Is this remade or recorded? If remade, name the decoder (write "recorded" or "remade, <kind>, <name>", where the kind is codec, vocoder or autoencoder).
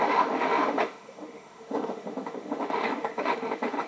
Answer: remade, autoencoder, DAC-VAE